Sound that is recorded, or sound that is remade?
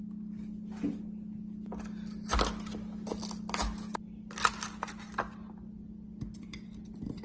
recorded